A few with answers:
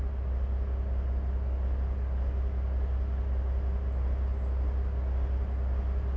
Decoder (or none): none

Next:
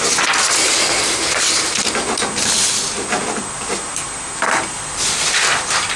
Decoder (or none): none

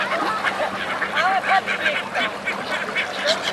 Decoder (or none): none